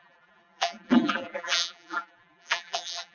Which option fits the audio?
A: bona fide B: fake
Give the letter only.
B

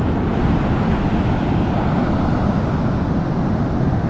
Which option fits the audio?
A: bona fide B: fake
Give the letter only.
A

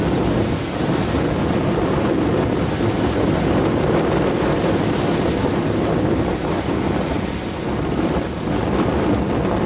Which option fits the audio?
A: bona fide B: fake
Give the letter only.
A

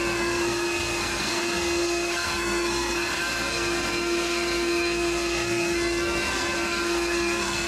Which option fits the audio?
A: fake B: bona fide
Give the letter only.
A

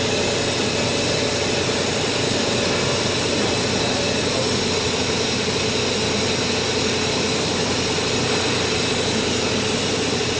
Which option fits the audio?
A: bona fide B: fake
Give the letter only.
A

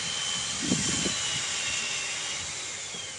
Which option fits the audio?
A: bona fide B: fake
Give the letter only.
A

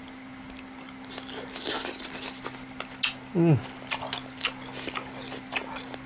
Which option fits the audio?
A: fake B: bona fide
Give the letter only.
B